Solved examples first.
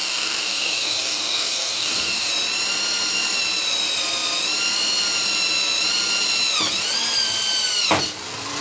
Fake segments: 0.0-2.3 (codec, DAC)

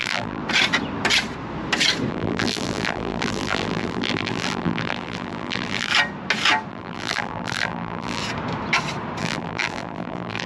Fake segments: 0.0-0.4 (vocoder, BigVGAN v2); 2.1-5.9; 6.7-8.2; 9.2-10.5

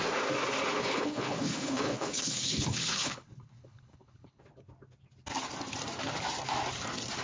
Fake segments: 0.8-4.4 (codec, HILCodec)

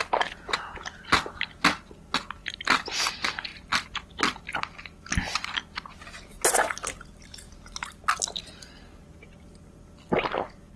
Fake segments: none

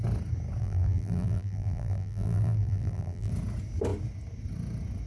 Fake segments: 0.6-3.3 (vocoder, BigVGAN v2)

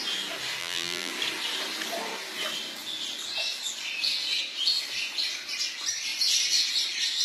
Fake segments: 0.6-1.1 (vocoder, BigVGAN v2)

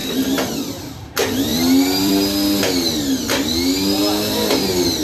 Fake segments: 0.0-0.7 (vocoder, BigVGAN v2); 1.5-2.1

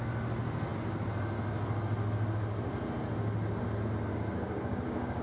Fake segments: 4.1-5.2 (codec, DAC)